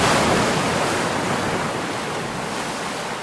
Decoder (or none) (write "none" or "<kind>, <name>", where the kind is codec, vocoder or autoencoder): none